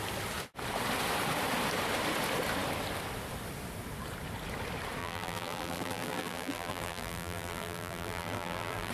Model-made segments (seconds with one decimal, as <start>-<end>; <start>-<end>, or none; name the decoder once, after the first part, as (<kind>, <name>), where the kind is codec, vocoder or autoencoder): 5.0-8.9 (vocoder, BigVGAN v2)